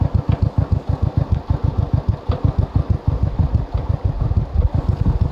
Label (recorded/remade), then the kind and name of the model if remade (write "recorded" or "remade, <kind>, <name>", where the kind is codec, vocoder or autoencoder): recorded